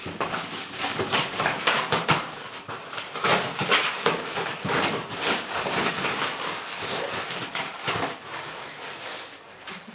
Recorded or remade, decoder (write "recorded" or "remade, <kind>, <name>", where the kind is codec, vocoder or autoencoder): remade, codec, DAC